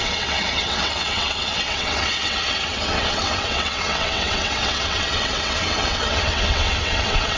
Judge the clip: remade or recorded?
remade